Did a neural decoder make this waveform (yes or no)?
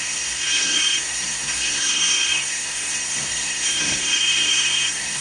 yes